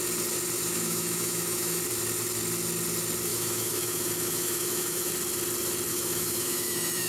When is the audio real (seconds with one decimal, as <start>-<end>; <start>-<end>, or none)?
0.0-0.7; 1.8-3.3; 5.1-5.9